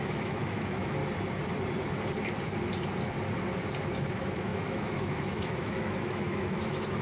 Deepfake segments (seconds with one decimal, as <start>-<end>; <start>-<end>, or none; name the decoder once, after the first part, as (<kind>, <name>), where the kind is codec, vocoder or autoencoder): 0.0-1.0 (autoencoder, DAC-VAE); 3.9-7.0